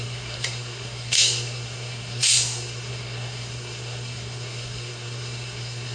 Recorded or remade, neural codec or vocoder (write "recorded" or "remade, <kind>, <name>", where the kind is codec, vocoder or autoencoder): remade, codec, SNAC